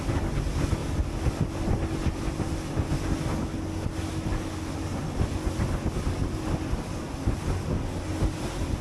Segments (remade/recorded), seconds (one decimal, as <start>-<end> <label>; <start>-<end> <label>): 0.0-8.8 recorded